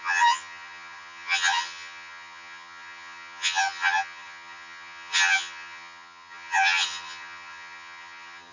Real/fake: fake